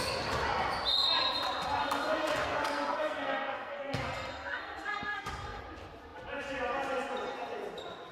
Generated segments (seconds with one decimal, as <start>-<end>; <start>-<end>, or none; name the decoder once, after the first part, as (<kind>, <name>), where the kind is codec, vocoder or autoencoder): 1.8-5.6 (codec, SNAC)